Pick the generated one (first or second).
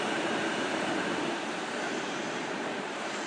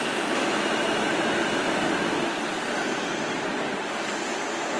first